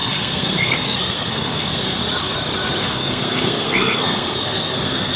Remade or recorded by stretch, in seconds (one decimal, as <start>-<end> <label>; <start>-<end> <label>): 0.0-2.0 remade; 2.0-2.8 recorded; 2.8-5.2 remade